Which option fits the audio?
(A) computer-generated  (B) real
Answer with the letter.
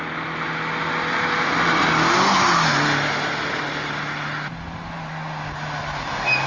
B